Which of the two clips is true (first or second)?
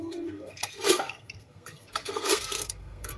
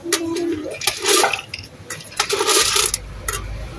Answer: second